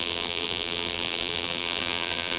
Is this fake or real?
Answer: fake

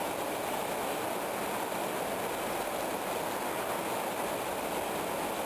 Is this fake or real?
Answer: real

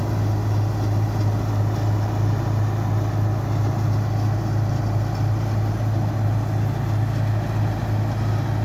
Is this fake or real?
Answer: real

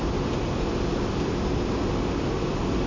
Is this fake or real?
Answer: real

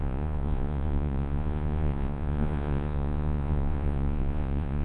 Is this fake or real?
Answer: fake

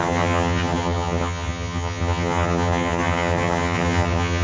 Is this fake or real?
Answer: fake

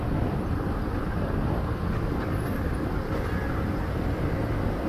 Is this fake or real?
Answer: real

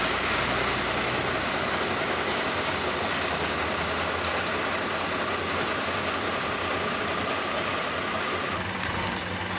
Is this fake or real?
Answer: real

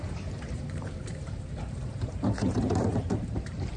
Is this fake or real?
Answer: fake